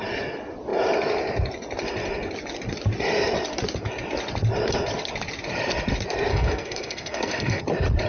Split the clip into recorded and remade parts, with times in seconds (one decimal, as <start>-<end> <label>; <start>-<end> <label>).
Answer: 0.0-6.3 recorded; 6.3-7.6 remade; 7.6-8.1 recorded